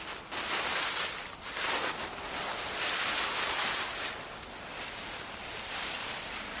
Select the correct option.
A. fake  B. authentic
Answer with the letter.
B